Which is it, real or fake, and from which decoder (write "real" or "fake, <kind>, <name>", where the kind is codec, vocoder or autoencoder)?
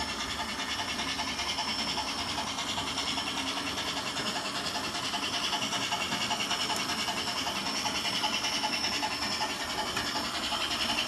real